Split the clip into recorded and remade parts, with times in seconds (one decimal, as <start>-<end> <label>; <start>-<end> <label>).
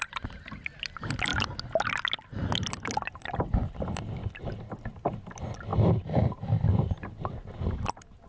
0.0-8.3 recorded